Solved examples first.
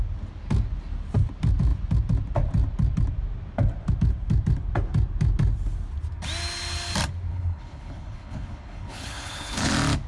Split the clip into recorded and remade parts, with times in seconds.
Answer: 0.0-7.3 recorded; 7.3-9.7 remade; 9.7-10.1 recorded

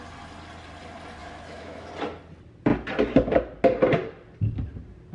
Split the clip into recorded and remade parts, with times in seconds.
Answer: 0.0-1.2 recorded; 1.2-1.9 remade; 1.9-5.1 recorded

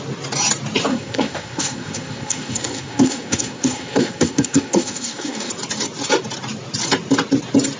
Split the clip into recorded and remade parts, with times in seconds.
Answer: 0.0-0.9 recorded; 0.9-5.5 remade; 5.5-7.8 recorded

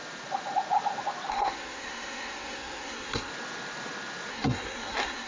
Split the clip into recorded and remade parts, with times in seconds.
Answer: 0.0-1.3 recorded; 1.3-3.3 remade; 3.3-4.3 recorded; 4.3-5.3 remade